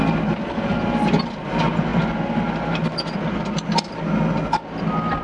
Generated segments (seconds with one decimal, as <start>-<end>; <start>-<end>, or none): none